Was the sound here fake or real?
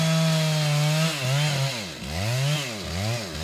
real